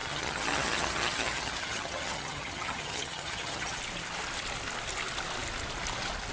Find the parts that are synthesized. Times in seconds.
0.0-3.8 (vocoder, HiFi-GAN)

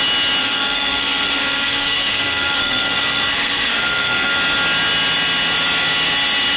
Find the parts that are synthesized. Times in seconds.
0.4-4.3 (codec, SNAC)

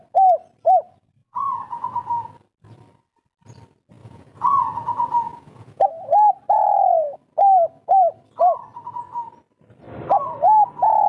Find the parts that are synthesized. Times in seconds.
1.2-2.3 (vocoder, Vocos); 4.0-5.9

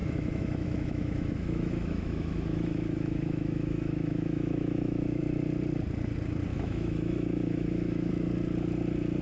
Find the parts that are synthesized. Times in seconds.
0.0-5.2 (autoencoder, DAC-VAE); 6.5-8.1

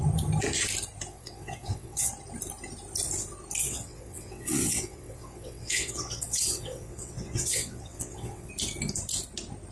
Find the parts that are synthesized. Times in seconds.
1.1-2.1 (vocoder, WaveNeXt); 3.6-8.5